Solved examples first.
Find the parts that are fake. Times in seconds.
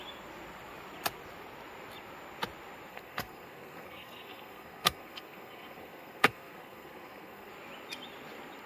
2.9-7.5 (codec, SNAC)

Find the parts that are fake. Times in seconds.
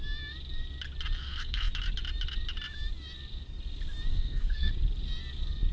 1.2-1.7 (codec, SNAC); 4.1-4.7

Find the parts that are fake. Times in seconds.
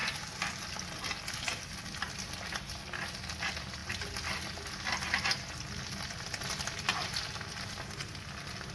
none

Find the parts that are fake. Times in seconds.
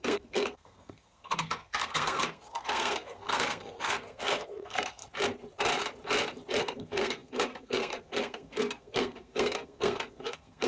0.0-5.0 (codec, SNAC); 6.6-10.7